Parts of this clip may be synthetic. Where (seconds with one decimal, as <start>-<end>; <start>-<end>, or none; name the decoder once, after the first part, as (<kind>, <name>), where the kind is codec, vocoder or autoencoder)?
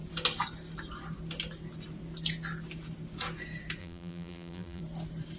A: 3.8-4.8 (vocoder, BigVGAN v2)